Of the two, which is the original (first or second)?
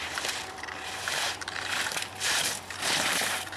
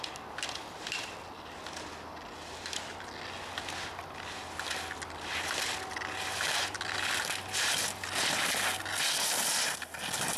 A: second